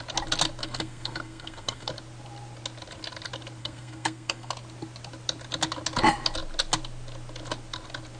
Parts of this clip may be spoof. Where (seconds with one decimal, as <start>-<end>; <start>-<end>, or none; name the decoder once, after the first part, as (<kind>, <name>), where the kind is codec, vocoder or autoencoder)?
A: 0.6-1.9 (codec, SNAC); 3.6-4.5